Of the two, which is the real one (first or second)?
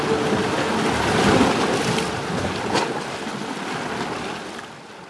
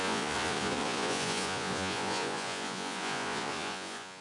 first